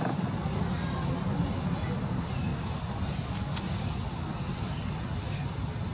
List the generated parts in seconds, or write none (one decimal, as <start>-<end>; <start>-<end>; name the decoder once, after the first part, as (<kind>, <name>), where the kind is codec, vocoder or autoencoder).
none